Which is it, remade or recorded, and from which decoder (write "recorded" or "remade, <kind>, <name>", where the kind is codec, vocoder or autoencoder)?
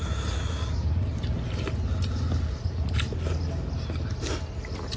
recorded